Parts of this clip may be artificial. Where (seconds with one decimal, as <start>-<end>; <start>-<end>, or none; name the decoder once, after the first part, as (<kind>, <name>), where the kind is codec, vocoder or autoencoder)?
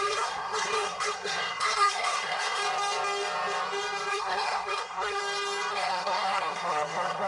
0.0-2.6 (codec, SNAC); 4.1-5.2; 5.7-7.3